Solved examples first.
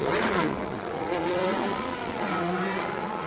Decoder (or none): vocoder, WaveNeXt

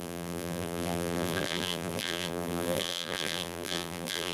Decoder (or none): vocoder, BigVGAN v2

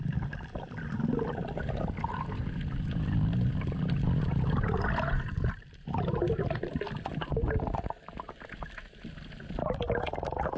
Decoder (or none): none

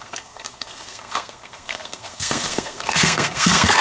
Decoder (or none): codec, SNAC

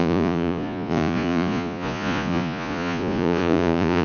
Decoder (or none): vocoder, Vocos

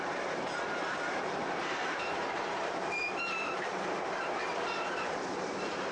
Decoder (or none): vocoder, BigVGAN v2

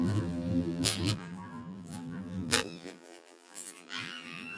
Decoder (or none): vocoder, BigVGAN v2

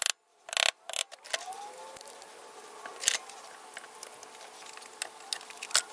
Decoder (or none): none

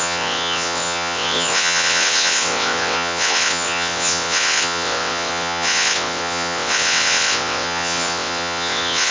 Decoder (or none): vocoder, WaveNeXt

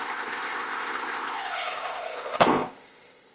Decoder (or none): codec, ZipCodec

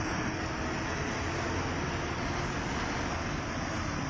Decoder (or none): none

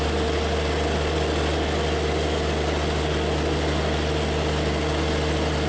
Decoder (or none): none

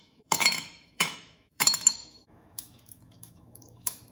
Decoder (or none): autoencoder, DAC-VAE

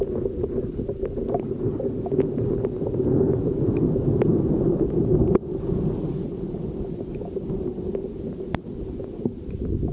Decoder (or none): none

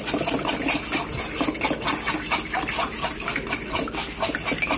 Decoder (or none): none